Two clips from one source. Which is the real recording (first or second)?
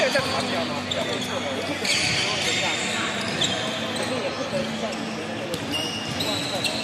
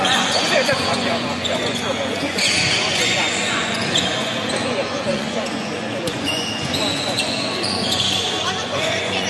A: first